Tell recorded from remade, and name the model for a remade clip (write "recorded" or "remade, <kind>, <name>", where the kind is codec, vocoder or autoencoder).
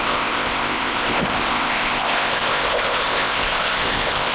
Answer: remade, codec, ZipCodec